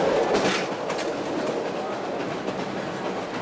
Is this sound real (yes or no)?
yes